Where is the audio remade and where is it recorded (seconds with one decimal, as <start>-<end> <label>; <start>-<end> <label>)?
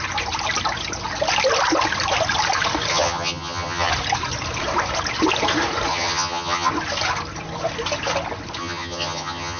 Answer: 0.0-2.9 recorded; 2.9-3.9 remade; 3.9-5.9 recorded; 5.9-6.7 remade; 6.7-8.6 recorded; 8.6-9.6 remade